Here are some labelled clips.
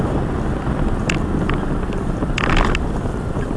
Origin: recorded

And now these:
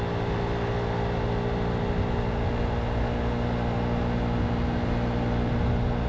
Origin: recorded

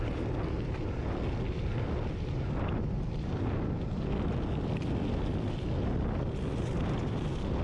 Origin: recorded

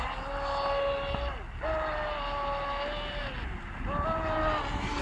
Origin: recorded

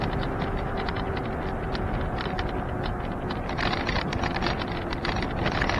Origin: recorded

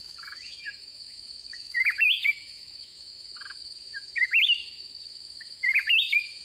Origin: remade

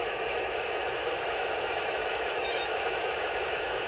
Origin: remade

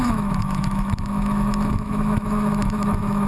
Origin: remade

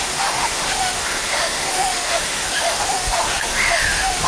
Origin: remade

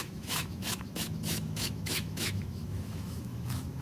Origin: remade